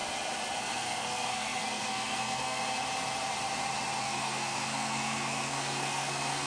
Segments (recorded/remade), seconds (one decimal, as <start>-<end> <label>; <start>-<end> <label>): 0.0-0.6 recorded; 0.6-2.6 remade; 2.6-4.0 recorded; 4.0-6.5 remade